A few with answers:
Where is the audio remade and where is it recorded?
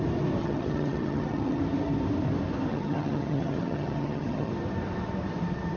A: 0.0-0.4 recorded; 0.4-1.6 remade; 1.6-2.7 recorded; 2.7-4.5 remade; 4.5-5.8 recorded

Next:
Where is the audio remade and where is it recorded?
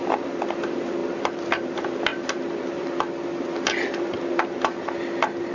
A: 0.0-5.5 recorded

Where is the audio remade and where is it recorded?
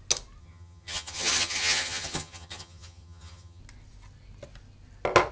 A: 0.0-0.4 recorded; 0.4-3.6 remade; 3.6-5.3 recorded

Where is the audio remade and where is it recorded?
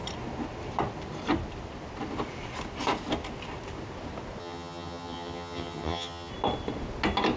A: 0.0-4.4 recorded; 4.4-6.3 remade; 6.3-7.4 recorded